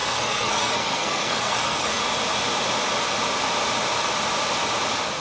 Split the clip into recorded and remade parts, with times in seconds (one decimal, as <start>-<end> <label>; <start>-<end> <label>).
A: 0.0-2.0 remade; 2.0-5.2 recorded